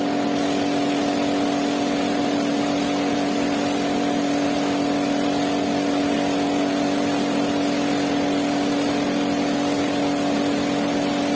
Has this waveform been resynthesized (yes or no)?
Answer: no